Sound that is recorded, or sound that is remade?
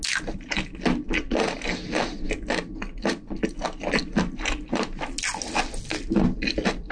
recorded